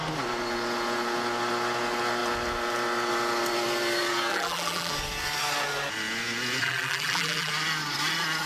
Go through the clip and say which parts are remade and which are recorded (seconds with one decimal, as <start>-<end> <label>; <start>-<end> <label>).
0.0-4.3 recorded; 4.3-4.9 remade; 4.9-6.6 recorded; 6.6-7.5 remade; 7.5-8.5 recorded